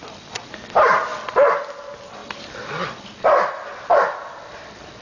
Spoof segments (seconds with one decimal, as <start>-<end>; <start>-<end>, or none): none